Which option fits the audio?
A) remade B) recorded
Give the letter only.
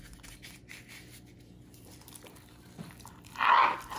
B